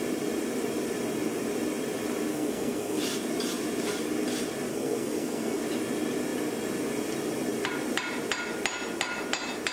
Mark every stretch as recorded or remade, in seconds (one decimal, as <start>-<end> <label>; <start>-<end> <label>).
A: 0.0-2.3 recorded; 2.3-3.0 remade; 3.0-4.7 recorded; 4.7-5.6 remade; 5.6-9.7 recorded